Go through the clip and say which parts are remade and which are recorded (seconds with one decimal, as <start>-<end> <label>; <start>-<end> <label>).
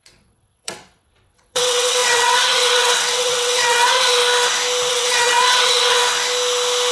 0.0-4.2 remade; 4.2-4.9 recorded; 4.9-6.0 remade; 6.0-6.9 recorded